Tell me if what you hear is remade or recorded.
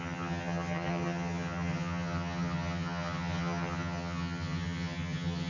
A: remade